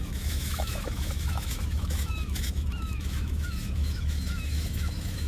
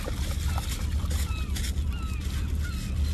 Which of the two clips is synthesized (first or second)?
first